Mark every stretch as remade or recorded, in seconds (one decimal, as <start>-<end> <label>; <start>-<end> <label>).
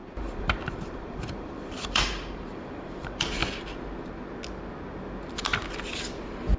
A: 0.0-3.4 remade; 3.4-6.6 recorded